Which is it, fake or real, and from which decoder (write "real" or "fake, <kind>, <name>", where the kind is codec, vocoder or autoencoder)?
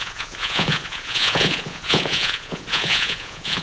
fake, vocoder, Vocos